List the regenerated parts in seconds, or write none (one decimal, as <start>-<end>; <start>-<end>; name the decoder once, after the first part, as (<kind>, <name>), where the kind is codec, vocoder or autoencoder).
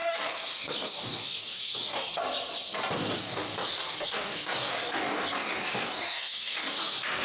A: 0.0-2.2 (codec, DAC); 3.2-7.2